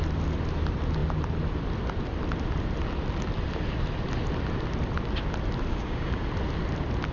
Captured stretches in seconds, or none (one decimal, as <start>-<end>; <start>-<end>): 0.0-5.7; 6.2-7.1